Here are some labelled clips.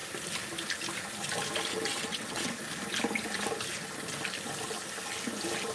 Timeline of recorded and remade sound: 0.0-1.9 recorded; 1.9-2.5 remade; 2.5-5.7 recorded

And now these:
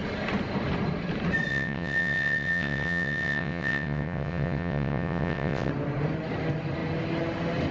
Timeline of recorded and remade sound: 0.0-1.5 recorded; 1.5-5.7 remade; 5.7-7.7 recorded